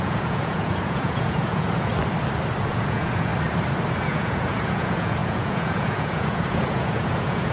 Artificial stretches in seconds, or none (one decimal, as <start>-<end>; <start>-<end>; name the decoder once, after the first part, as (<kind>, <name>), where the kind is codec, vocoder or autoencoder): 0.0-1.9 (vocoder, Vocos); 2.6-3.3; 3.9-7.5